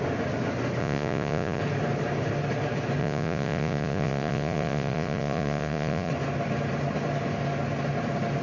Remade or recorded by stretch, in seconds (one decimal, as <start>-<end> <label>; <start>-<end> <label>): 0.0-0.8 recorded; 0.8-1.6 remade; 1.6-3.0 recorded; 3.0-6.1 remade; 6.1-8.4 recorded

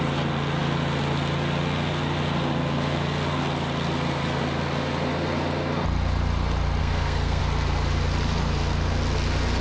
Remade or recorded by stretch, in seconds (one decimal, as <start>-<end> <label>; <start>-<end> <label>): 0.0-6.8 recorded; 6.8-7.4 remade; 7.4-9.6 recorded

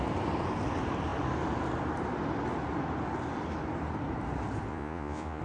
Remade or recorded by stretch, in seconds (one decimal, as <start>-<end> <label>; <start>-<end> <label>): 0.0-4.7 recorded; 4.7-5.4 remade

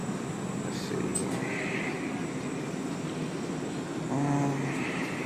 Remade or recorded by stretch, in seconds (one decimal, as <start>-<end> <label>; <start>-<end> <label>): 0.0-5.3 recorded

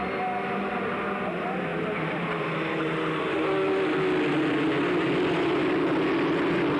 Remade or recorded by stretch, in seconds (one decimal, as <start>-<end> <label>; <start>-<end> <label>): 0.0-6.8 recorded

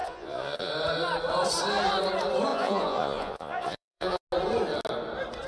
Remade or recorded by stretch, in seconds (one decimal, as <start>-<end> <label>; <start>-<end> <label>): 0.0-0.7 remade; 0.7-2.5 recorded; 2.5-4.2 remade; 4.2-5.5 recorded

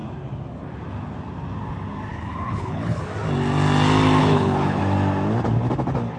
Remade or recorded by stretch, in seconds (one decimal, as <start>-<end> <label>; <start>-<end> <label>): 0.0-2.1 recorded; 2.1-3.0 remade; 3.0-4.2 recorded; 4.2-4.8 remade; 4.8-6.2 recorded

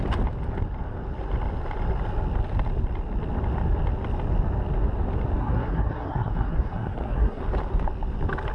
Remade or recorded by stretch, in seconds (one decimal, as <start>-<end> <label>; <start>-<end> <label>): 0.0-5.4 recorded; 5.4-7.4 remade; 7.4-8.5 recorded